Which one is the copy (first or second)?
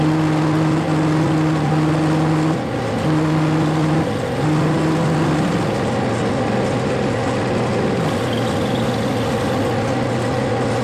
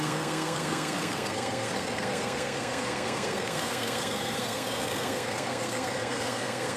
second